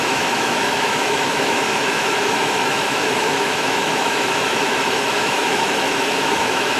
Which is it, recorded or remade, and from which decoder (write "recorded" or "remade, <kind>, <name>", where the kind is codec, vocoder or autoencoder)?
remade, autoencoder, DAC-VAE